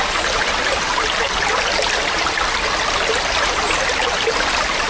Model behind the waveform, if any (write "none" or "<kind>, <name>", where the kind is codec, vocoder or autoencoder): none